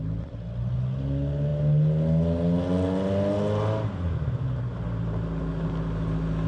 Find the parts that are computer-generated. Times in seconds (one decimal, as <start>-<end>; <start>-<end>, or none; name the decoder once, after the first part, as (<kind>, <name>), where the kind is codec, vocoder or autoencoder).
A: none